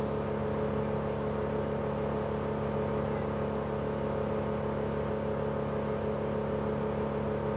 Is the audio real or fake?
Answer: real